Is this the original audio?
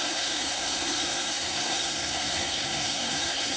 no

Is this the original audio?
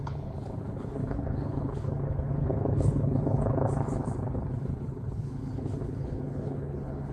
no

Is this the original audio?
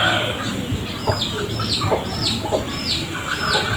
no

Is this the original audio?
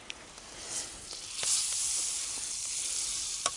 yes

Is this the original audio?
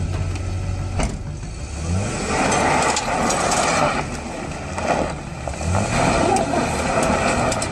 yes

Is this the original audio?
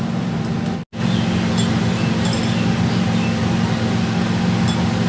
yes